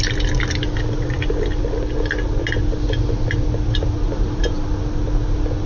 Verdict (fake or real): real